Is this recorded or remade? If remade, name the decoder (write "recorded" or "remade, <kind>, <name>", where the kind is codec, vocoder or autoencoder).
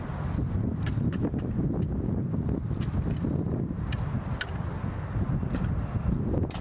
recorded